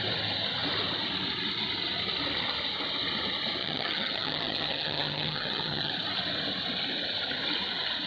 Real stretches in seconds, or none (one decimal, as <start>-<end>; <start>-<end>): 0.0-3.6; 5.9-8.1